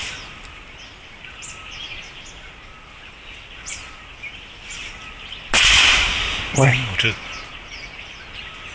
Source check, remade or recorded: recorded